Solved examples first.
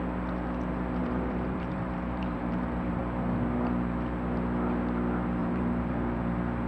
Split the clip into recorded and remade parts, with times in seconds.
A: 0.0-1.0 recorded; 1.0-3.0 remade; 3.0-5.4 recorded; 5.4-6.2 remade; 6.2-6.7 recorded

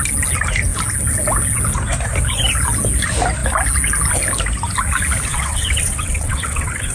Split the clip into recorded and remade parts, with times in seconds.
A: 0.0-5.3 recorded; 5.3-6.9 remade

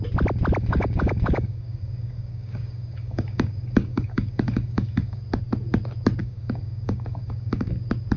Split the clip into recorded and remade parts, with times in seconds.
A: 0.0-0.6 recorded; 0.6-5.2 remade; 5.2-6.2 recorded; 6.2-7.7 remade; 7.7-8.2 recorded

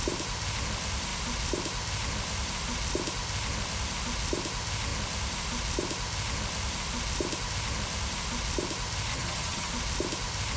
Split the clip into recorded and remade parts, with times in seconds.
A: 0.0-9.1 recorded; 9.1-9.7 remade; 9.7-10.6 recorded